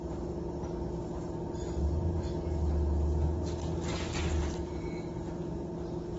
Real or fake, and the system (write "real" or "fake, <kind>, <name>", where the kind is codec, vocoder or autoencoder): real